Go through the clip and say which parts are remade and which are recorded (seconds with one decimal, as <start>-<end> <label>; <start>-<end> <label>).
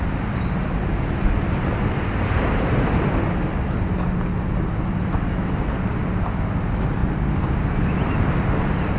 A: 0.0-9.0 recorded